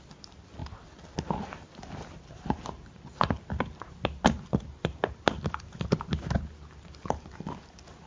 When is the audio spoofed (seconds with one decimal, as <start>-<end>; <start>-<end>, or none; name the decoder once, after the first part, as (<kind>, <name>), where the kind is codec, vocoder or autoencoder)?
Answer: none

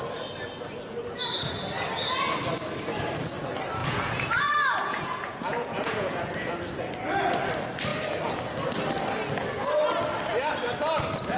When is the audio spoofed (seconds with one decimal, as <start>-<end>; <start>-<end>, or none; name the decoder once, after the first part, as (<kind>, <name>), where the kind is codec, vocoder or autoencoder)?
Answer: 3.8-6.5 (vocoder, Vocos)

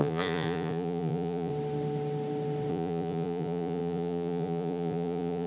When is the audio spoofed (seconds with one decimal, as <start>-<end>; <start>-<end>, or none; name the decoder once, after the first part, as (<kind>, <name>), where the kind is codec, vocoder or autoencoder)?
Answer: 0.0-1.5 (vocoder, Vocos); 2.7-5.5

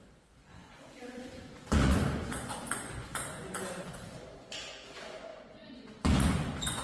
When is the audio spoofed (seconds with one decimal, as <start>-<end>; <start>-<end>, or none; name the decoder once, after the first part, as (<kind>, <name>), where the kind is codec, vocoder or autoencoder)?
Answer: 0.0-6.8 (vocoder, Vocos)

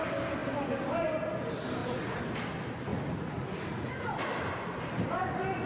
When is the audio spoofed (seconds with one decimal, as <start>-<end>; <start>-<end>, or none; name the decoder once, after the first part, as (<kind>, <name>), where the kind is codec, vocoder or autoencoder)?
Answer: 1.8-2.4 (vocoder, Vocos); 2.9-4.3